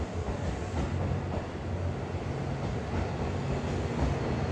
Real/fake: real